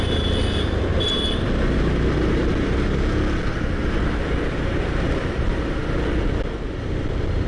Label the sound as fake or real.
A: real